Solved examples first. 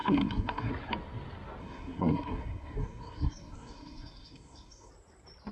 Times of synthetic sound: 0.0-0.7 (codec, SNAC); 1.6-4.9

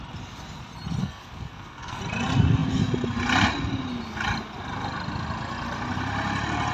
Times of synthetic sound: 1.0-2.0 (codec, SNAC)

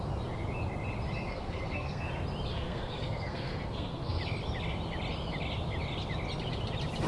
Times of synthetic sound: 1.3-2.0 (codec, SNAC); 2.5-4.2

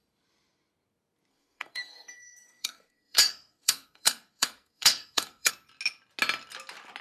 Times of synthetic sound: 1.3-5.5 (codec, SNAC)

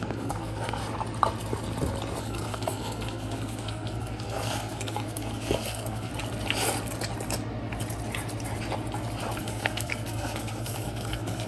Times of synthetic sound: 0.0-0.8 (codec, SNAC); 2.2-6.1; 9.4-11.5

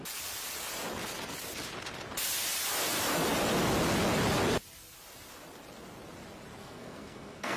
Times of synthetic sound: 6.6-7.6 (codec, SNAC)

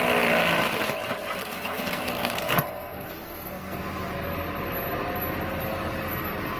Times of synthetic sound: 1.4-3.8 (codec, SNAC)

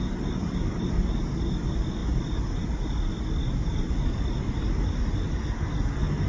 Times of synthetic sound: none